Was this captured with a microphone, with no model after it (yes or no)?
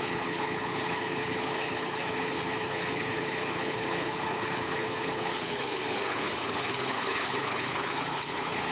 no